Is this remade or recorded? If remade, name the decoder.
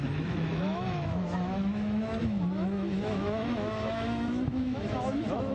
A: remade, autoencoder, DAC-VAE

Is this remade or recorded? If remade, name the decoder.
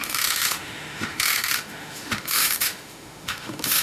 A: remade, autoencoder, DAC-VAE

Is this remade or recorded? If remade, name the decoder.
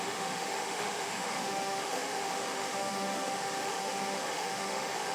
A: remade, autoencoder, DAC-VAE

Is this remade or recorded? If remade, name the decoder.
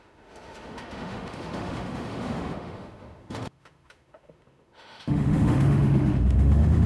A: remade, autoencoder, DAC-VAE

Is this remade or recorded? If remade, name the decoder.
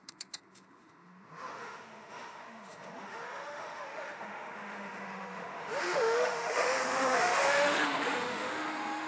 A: remade, autoencoder, DAC-VAE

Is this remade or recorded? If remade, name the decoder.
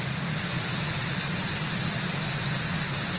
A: recorded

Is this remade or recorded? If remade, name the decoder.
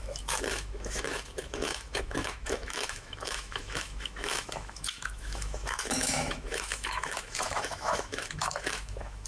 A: remade, autoencoder, DAC-VAE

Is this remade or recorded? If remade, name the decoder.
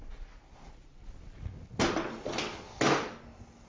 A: recorded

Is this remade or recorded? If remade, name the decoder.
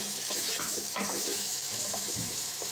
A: remade, autoencoder, DAC-VAE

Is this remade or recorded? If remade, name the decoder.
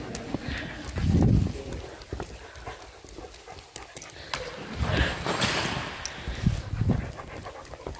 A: recorded